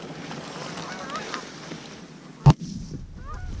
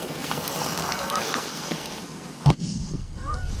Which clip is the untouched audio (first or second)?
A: first